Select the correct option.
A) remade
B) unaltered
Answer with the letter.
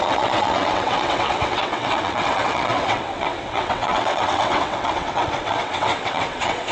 A